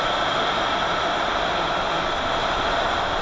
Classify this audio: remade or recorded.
recorded